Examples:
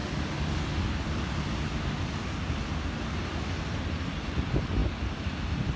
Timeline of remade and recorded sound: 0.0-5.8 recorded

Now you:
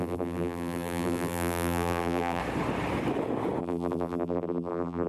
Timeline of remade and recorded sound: 0.0-2.4 remade; 2.4-3.6 recorded; 3.6-5.1 remade

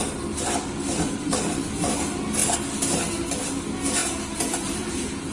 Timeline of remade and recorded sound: 0.0-4.0 recorded; 4.0-5.3 remade

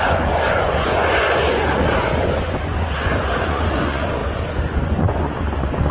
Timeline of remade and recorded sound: 0.0-5.9 remade

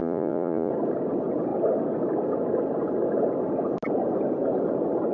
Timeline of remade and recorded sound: 0.0-0.7 remade; 0.7-5.1 recorded

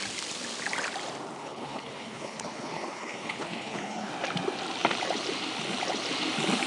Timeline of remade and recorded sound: 0.0-1.4 recorded; 1.4-4.1 remade; 4.1-6.7 recorded